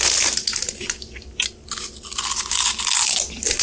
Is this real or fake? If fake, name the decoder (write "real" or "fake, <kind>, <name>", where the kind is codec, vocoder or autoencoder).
real